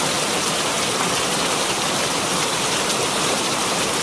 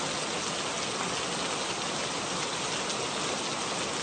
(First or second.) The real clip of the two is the second